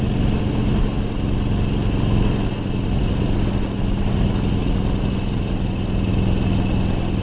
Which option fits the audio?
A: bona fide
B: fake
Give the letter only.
A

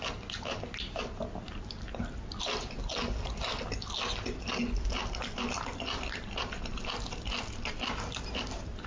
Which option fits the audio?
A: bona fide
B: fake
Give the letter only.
A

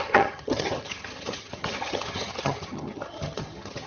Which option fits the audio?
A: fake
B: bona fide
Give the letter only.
A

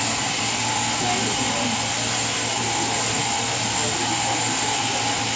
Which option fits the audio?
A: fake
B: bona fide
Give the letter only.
B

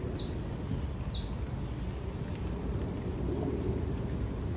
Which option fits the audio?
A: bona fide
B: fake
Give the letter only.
A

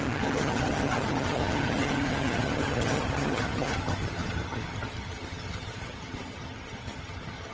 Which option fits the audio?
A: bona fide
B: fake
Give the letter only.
B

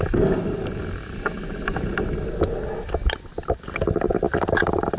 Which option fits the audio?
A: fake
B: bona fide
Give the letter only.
B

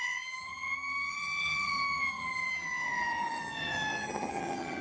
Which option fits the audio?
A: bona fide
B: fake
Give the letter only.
B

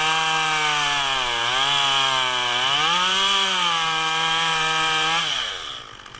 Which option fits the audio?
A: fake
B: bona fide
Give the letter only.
B